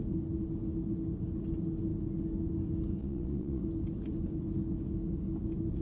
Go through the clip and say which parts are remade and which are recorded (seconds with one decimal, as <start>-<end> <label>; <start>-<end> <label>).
0.0-3.0 recorded; 3.0-3.6 remade; 3.6-5.8 recorded